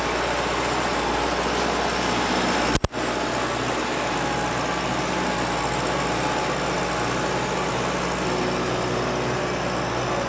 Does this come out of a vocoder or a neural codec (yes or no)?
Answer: no